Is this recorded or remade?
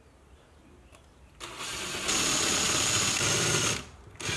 recorded